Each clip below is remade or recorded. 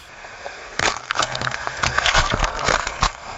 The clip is remade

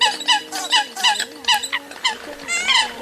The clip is recorded